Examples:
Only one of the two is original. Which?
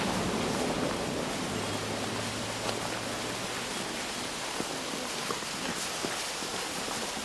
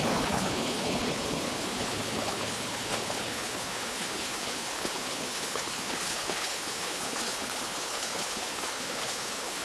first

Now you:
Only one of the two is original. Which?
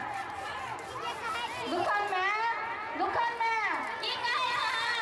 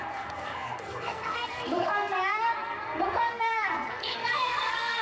first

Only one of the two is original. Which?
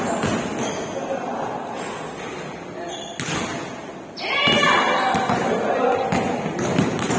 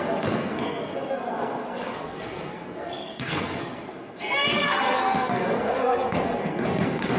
first